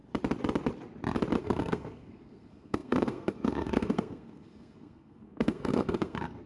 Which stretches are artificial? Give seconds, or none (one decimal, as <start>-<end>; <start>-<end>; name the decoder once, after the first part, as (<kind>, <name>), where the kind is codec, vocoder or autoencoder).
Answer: 1.4-6.5 (codec, SNAC)